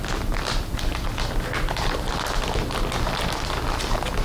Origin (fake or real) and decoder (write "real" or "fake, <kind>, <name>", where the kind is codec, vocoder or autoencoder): real